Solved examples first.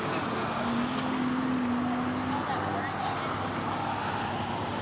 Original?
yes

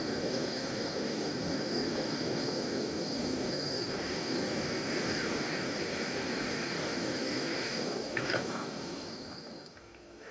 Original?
no